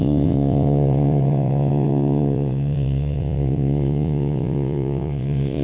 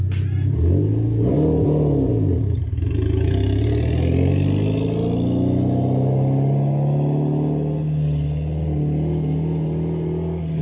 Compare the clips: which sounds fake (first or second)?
first